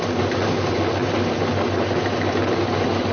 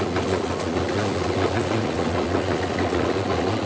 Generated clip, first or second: second